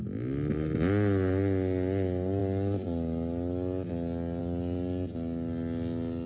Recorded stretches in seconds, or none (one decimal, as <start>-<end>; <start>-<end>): 0.0-6.3